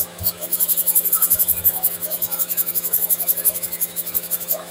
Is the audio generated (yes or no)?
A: yes